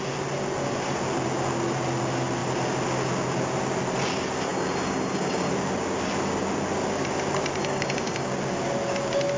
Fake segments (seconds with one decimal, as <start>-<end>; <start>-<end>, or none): 4.5-5.5; 7.6-8.3

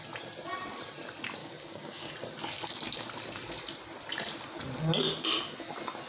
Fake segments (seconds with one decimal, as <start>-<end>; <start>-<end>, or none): 1.4-2.1